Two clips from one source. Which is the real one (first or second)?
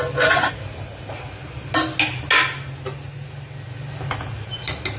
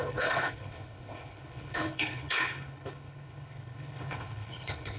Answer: first